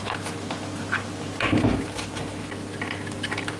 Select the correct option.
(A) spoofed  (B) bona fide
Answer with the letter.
B